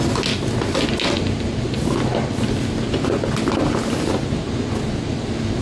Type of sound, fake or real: real